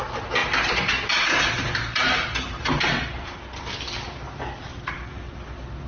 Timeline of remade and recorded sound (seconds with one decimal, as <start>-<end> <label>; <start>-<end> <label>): 0.0-0.4 recorded; 0.4-2.9 remade; 2.9-4.7 recorded; 4.7-5.3 remade; 5.3-5.9 recorded